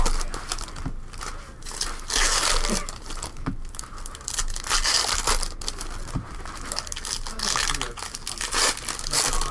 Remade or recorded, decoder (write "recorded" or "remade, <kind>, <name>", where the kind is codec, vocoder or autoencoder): recorded